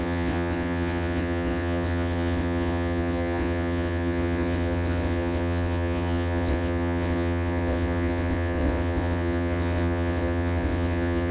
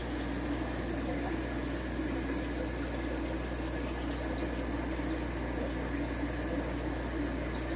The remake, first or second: first